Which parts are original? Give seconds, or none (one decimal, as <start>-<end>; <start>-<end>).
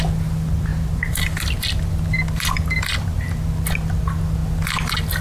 0.0-5.2